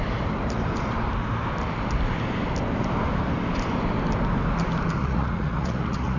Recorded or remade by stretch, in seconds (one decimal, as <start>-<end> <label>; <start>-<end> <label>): 0.0-5.0 recorded; 5.0-6.2 remade